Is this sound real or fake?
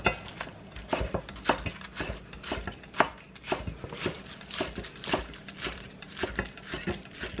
real